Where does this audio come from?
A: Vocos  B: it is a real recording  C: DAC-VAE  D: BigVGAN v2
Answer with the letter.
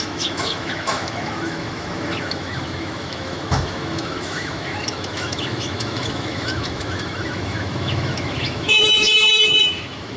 C